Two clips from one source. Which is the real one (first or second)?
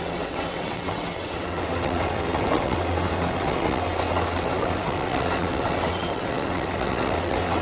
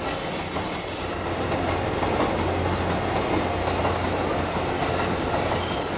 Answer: second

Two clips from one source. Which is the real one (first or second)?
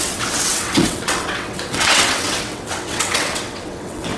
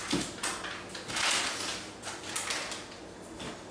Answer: second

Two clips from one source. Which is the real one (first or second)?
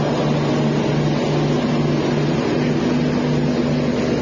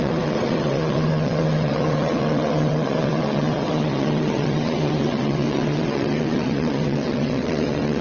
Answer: first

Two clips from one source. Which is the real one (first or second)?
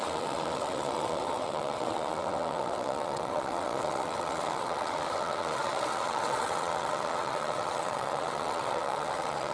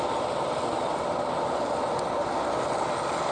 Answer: second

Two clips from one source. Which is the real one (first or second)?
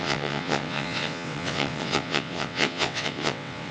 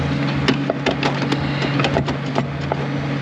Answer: second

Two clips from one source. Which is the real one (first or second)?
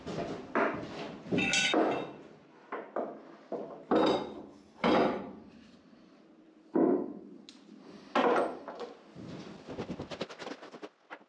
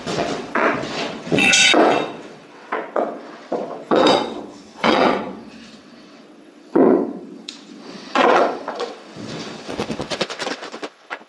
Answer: first